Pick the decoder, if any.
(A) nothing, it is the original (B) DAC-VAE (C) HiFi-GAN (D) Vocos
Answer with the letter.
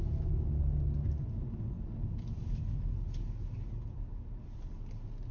A